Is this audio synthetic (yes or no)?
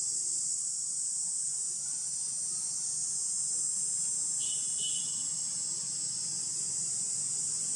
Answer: no